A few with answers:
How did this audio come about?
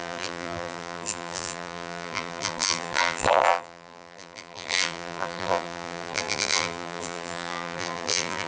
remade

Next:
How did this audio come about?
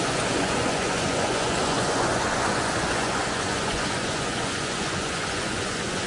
remade